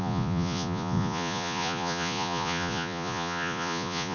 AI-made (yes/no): yes